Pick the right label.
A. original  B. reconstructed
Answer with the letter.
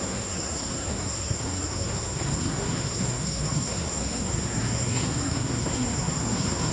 B